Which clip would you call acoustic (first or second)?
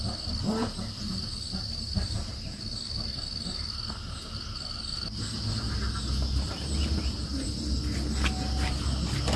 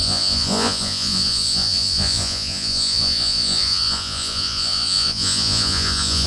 first